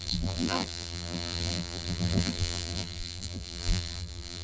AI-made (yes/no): yes